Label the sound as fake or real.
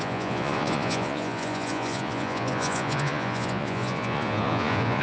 fake